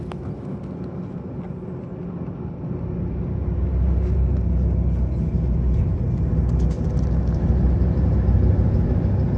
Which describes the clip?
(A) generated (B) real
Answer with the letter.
B